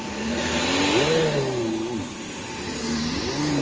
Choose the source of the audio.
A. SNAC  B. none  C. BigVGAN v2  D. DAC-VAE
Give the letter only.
B